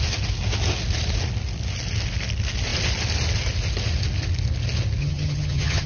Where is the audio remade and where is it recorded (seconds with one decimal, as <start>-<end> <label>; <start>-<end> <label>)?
0.0-5.0 recorded; 5.0-5.9 remade

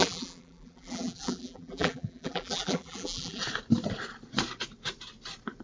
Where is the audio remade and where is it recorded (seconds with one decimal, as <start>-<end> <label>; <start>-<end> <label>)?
0.0-3.4 remade; 3.4-5.6 recorded

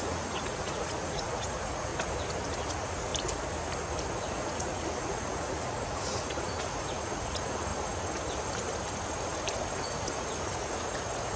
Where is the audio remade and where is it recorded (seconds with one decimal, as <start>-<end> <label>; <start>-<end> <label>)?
0.0-1.9 remade; 1.9-2.7 recorded; 2.7-3.1 remade; 3.1-4.3 recorded; 4.3-7.7 remade; 7.7-9.8 recorded; 9.8-11.4 remade

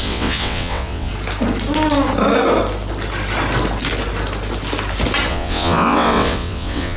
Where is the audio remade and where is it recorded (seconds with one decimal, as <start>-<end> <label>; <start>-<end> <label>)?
0.0-1.1 remade; 1.1-5.3 recorded; 5.3-7.0 remade

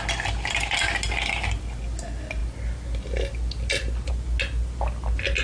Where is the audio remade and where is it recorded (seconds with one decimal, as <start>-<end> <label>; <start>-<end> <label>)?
0.0-5.4 recorded

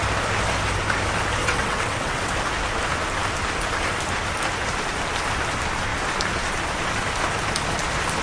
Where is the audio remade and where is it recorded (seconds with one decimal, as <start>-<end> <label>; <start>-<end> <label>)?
0.0-1.4 recorded; 1.4-2.3 remade; 2.3-8.2 recorded

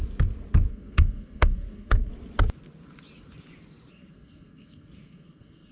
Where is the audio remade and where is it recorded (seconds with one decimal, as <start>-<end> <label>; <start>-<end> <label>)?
0.0-0.7 recorded; 0.7-2.1 remade; 2.1-3.9 recorded; 3.9-5.7 remade

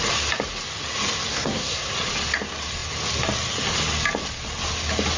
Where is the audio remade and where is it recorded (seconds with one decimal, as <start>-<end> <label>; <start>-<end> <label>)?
0.0-1.3 recorded; 1.3-1.9 remade; 1.9-5.2 recorded